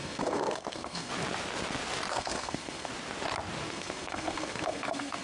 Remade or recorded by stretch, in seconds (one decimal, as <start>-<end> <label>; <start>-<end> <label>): 0.0-1.1 remade; 1.1-2.1 recorded; 2.1-2.9 remade; 2.9-3.7 recorded; 3.7-5.2 remade